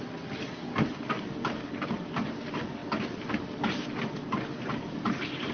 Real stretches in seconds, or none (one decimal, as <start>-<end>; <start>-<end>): 0.0-5.5